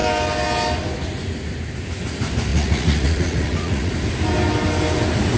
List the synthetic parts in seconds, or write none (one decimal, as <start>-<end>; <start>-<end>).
2.5-3.9